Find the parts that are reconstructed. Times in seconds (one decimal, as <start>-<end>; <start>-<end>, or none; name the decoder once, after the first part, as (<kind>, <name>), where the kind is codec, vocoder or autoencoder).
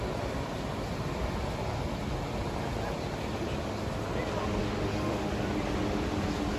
4.6-5.3 (autoencoder, DAC-VAE)